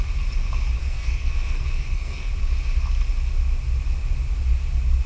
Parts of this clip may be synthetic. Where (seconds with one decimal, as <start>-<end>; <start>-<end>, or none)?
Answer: 0.8-2.3